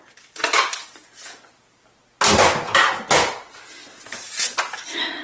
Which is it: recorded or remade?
recorded